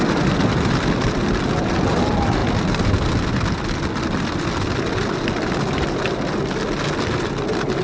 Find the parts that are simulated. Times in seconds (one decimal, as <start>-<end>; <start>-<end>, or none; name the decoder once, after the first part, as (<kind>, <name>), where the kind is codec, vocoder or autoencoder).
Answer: none